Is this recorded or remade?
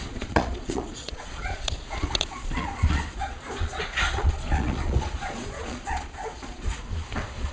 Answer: remade